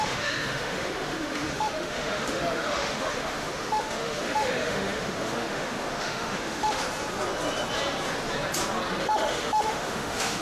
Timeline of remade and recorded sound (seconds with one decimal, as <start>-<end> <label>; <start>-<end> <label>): 0.0-6.8 remade; 6.8-9.0 recorded; 9.0-10.4 remade